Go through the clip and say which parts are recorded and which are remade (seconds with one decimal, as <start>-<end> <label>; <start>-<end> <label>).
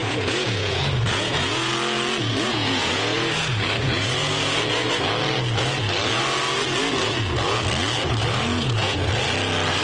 0.0-1.7 remade; 1.7-2.3 recorded; 2.3-4.3 remade; 4.3-8.5 recorded; 8.5-9.1 remade; 9.1-9.8 recorded